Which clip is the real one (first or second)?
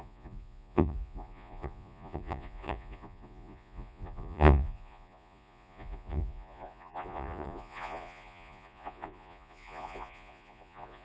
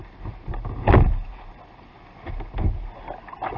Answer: second